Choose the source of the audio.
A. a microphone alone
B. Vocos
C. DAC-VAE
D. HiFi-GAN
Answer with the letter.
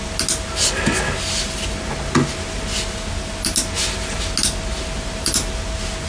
A